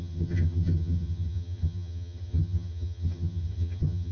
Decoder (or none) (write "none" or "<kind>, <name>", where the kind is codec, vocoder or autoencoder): vocoder, HiFi-GAN